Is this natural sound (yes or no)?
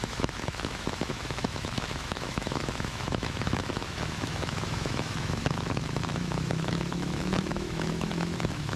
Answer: no